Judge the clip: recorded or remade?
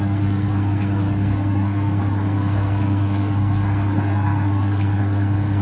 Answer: remade